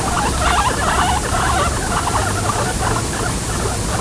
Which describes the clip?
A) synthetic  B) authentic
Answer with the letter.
B